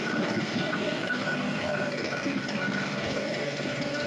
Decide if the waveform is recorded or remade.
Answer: remade